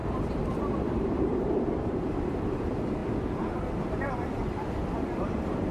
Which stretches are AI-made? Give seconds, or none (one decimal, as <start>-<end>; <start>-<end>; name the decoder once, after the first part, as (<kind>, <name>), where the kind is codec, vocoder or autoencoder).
0.0-5.7 (vocoder, BigVGAN v2)